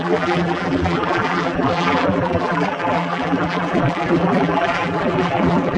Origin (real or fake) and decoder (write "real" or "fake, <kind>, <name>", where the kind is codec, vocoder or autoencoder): fake, vocoder, BigVGAN v2